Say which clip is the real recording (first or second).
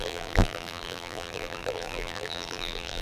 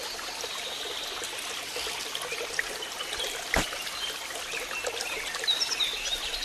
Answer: second